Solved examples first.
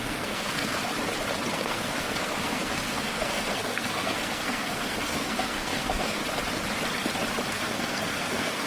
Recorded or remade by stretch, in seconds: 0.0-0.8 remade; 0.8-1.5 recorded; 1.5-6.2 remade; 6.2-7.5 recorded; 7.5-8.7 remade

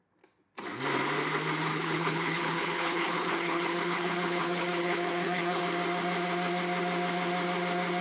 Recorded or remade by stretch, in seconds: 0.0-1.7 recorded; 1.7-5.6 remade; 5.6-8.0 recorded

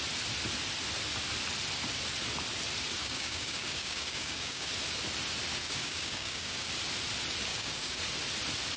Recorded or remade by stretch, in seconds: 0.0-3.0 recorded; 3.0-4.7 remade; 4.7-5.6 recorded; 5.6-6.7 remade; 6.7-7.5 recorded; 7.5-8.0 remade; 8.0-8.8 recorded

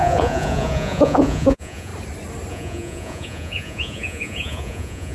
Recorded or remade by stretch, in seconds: 0.0-1.9 remade; 1.9-2.5 recorded; 2.5-5.1 remade